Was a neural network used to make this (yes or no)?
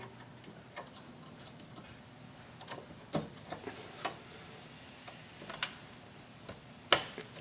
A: no